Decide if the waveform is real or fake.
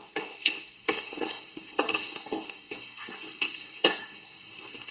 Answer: fake